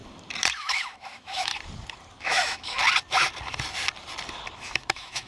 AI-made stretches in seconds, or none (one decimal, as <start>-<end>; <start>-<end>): 0.6-1.5; 2.2-2.8; 4.6-5.3